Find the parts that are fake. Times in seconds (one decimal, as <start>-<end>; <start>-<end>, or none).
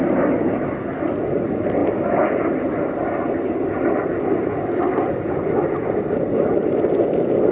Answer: none